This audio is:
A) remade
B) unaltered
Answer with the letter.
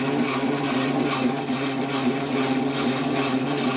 B